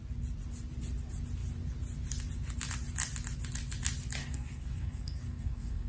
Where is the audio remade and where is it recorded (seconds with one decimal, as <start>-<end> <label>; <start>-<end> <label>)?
0.0-4.2 recorded; 4.2-5.9 remade